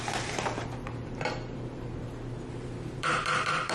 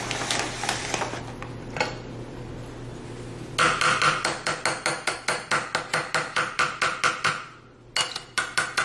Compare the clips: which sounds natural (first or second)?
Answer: second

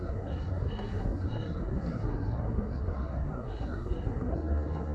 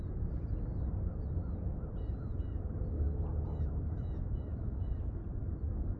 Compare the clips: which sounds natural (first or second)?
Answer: second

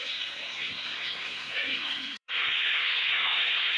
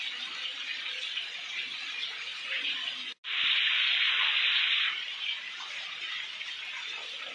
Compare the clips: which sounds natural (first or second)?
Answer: second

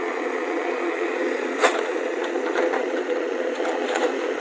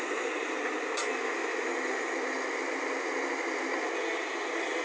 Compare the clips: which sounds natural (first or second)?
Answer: second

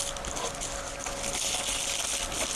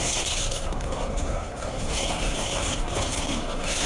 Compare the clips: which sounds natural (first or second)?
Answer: first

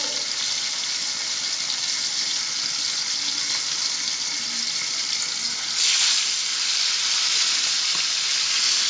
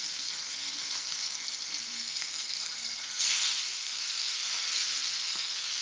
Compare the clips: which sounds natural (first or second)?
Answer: first